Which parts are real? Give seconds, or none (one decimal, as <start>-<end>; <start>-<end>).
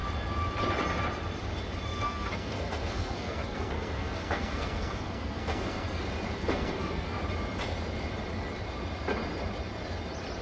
0.0-1.9; 6.0-6.4; 7.2-10.4